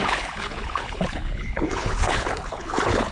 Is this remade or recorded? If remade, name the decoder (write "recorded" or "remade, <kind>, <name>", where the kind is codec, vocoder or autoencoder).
remade, codec, HILCodec